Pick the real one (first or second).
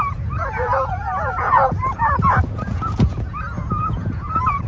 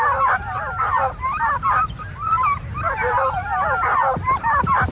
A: second